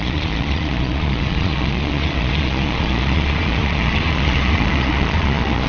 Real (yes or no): no